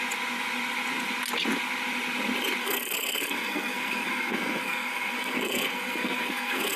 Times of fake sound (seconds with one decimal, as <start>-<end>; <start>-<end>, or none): 2.6-6.8